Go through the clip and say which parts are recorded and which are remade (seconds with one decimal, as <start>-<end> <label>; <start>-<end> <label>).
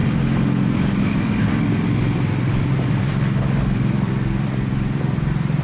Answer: 0.0-5.6 remade